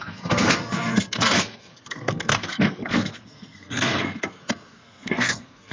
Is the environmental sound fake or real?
fake